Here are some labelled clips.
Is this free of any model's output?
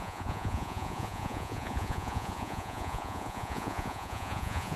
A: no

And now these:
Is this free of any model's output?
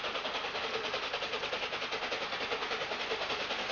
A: yes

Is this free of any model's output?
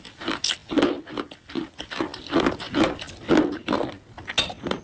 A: yes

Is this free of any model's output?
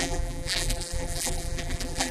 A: no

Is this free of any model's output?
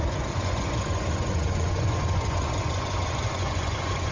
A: no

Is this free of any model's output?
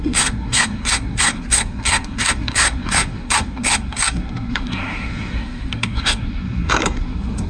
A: no